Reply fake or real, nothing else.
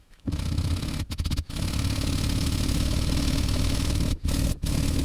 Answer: fake